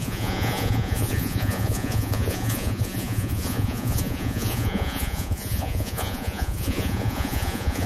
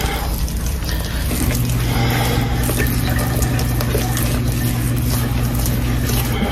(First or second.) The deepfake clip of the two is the first